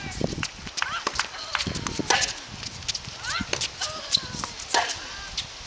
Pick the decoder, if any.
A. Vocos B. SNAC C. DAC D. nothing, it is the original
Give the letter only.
D